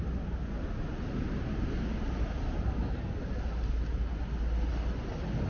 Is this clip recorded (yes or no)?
yes